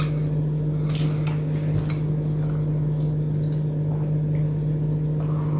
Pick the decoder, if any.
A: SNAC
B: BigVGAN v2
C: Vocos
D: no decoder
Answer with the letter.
D